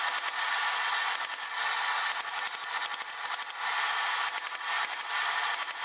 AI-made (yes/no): no